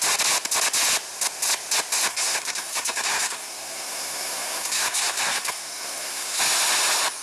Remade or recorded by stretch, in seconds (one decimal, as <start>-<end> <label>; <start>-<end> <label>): 0.0-2.1 recorded; 2.1-6.4 remade; 6.4-7.2 recorded